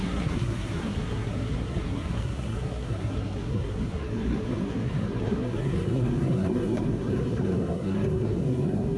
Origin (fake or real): fake